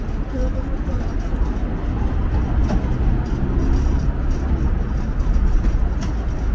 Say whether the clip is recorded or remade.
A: recorded